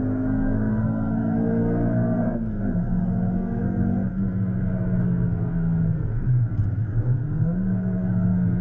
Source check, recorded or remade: remade